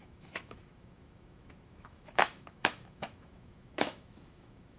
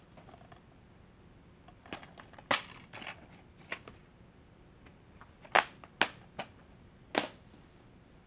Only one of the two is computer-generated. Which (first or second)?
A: first